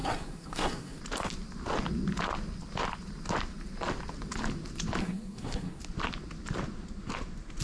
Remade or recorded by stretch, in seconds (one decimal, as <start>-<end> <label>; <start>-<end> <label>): 0.0-1.0 remade; 1.0-5.0 recorded; 5.0-5.8 remade; 5.8-7.6 recorded